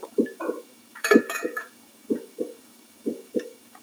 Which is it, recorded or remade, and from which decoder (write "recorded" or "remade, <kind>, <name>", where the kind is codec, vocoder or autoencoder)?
remade, autoencoder, DAC-VAE